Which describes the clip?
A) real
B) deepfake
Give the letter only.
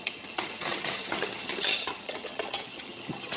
B